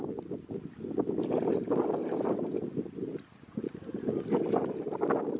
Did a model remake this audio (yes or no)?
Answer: no